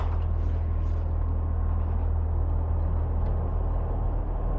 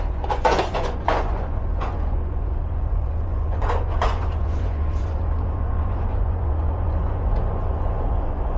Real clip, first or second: first